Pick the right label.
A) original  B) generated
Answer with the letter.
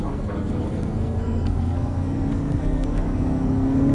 B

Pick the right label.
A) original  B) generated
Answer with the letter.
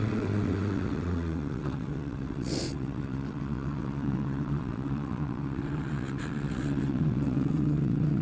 B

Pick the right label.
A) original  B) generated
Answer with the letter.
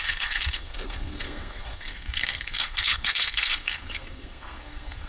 B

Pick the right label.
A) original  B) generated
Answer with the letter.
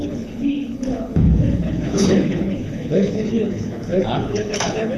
B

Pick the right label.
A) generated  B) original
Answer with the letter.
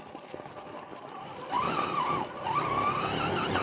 B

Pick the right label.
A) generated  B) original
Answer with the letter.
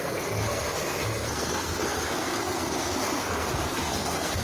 A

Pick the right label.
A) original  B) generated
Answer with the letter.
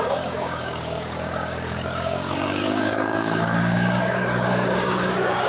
B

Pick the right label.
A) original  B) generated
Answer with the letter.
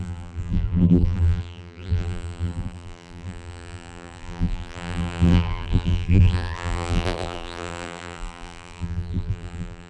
B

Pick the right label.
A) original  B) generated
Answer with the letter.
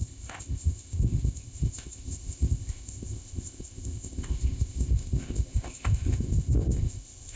B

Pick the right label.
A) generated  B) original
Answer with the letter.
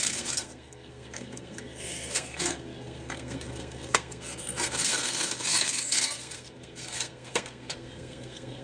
A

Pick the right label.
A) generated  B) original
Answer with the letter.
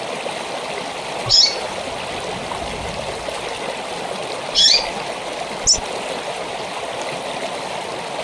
B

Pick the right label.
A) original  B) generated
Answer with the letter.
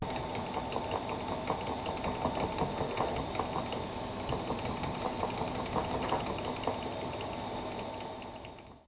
A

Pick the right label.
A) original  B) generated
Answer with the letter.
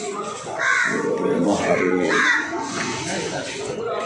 B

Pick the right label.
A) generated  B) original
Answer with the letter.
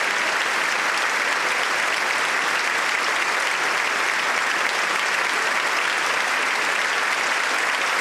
B